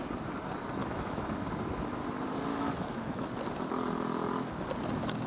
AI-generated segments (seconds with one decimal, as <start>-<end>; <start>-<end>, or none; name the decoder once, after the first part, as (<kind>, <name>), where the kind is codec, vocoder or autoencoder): 0.8-1.5 (autoencoder, DAC-VAE); 2.5-3.3